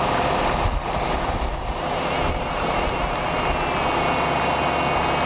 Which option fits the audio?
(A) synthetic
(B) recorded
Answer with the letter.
B